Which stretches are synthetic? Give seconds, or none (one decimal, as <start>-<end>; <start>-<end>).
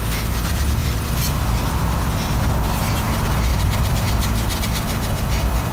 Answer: 0.8-1.3; 3.5-4.1